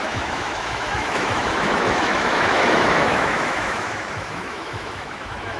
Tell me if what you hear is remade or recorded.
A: remade